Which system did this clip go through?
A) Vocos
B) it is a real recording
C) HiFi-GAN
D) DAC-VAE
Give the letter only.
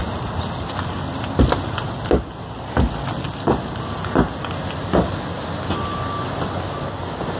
B